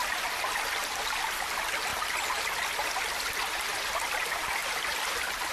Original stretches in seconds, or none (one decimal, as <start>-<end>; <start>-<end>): 0.0-5.5